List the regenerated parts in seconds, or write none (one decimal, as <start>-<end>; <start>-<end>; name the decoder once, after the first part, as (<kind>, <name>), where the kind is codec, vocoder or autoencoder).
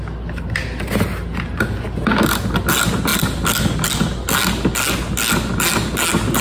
none